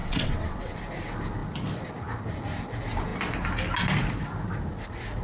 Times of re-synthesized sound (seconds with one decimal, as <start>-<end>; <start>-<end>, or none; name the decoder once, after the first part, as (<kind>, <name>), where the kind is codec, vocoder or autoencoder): 0.0-0.8 (vocoder, WaveNeXt)